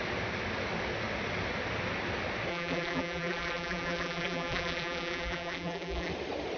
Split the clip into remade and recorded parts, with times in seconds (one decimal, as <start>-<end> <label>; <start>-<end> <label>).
0.0-2.5 recorded; 2.5-6.1 remade; 6.1-6.6 recorded